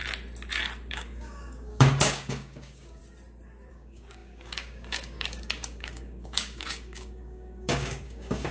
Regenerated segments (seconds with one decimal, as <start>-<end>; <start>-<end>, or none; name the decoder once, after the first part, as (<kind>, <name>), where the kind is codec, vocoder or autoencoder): 0.9-3.0 (codec, DAC); 3.7-8.5